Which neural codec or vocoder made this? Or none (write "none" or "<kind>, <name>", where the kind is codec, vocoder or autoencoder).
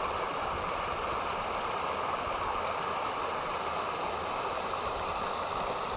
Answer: none